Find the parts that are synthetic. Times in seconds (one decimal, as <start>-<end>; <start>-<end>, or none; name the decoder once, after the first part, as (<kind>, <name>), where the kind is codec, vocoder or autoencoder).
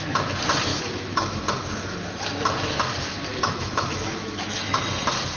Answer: 0.7-1.4 (autoencoder, DAC-VAE); 3.3-4.8